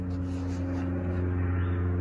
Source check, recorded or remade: recorded